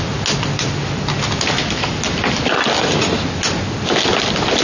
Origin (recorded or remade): recorded